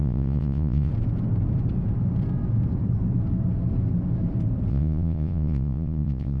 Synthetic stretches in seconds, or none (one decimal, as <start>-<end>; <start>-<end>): 0.0-0.9; 4.7-6.4